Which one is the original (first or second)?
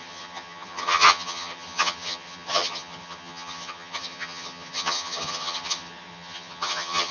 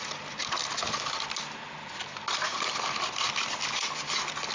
second